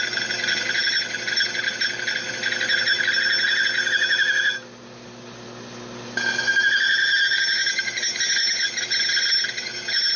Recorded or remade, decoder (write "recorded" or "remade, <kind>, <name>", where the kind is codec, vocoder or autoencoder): recorded